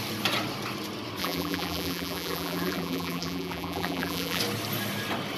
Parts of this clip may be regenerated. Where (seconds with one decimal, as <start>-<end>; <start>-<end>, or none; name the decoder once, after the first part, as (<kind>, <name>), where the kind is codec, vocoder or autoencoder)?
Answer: 1.2-4.4 (vocoder, BigVGAN v2)